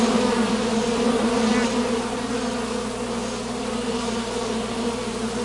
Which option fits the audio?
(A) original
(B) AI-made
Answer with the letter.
A